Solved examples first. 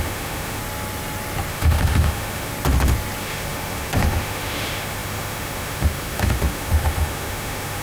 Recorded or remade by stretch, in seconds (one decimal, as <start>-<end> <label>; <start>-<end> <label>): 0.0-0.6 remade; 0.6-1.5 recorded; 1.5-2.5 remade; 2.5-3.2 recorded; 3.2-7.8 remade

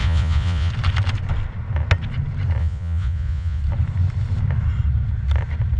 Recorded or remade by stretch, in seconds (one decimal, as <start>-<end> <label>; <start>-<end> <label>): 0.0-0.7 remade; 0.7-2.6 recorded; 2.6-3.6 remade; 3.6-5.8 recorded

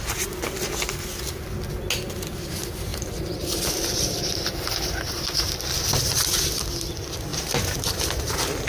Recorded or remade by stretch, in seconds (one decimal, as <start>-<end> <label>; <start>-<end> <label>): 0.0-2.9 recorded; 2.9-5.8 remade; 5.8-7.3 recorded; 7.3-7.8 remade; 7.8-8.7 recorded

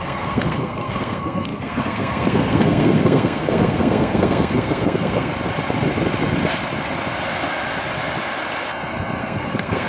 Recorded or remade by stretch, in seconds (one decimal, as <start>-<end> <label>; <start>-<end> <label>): 0.0-5.3 remade; 5.3-9.2 recorded; 9.2-9.9 remade

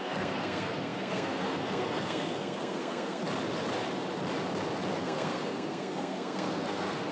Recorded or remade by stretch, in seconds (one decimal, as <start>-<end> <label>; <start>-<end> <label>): 0.0-3.2 remade; 3.2-5.0 recorded; 5.0-7.1 remade

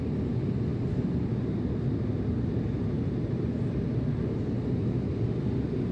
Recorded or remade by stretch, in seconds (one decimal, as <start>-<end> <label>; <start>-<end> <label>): 0.0-5.9 recorded

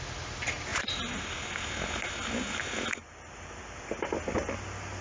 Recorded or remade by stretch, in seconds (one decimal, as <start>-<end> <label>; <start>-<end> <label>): 0.0-5.0 recorded

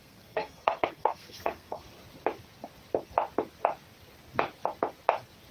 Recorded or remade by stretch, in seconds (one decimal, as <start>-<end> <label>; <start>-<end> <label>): 0.0-1.8 remade; 1.8-5.5 recorded